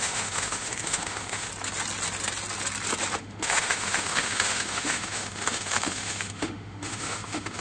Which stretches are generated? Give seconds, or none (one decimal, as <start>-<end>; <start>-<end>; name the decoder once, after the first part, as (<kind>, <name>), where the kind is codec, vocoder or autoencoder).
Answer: 0.0-1.5 (autoencoder, DAC-VAE); 3.2-7.6